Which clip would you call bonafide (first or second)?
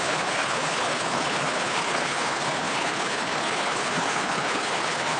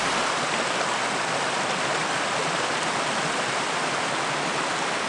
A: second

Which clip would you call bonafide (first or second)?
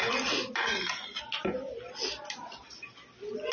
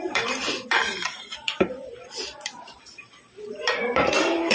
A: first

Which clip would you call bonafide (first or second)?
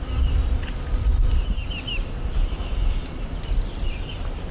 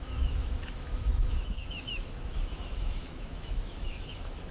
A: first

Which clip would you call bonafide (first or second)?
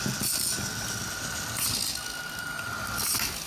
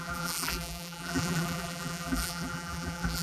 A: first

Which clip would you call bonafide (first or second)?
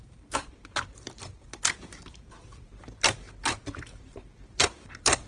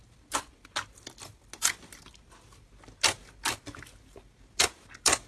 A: second